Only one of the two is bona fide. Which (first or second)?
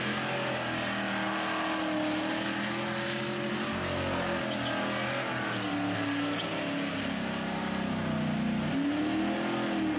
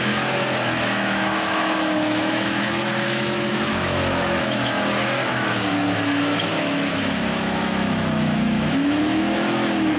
first